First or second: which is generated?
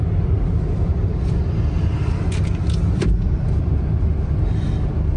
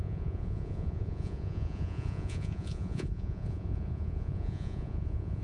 second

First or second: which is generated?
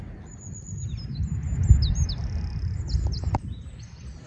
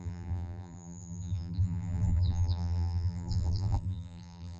second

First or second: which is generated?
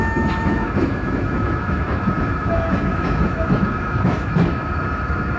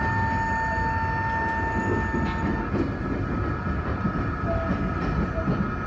first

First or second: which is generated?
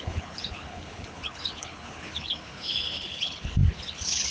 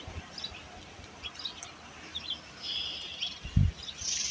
first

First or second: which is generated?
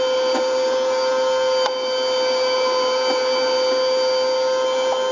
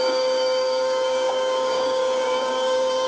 second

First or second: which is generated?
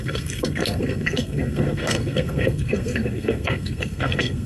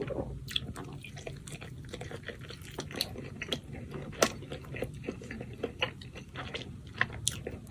first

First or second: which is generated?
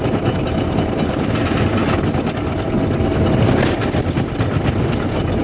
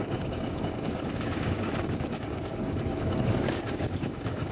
second